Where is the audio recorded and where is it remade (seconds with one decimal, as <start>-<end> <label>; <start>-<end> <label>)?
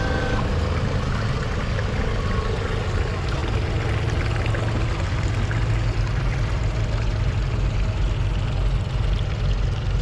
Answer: 0.0-10.0 recorded